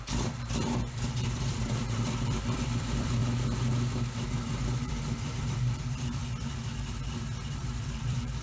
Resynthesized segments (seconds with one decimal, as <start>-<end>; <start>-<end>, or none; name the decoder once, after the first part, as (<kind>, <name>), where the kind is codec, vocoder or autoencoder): 0.0-3.2 (vocoder, BigVGAN v2); 4.5-6.2; 7.6-8.4